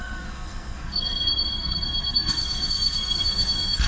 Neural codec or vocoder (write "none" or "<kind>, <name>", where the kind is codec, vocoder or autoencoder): codec, SNAC